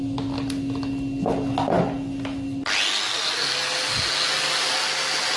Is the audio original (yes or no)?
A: yes